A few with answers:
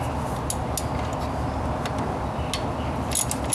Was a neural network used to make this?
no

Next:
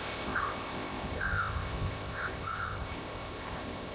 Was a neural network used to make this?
yes